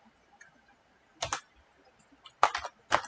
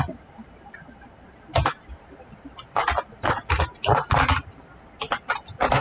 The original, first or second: first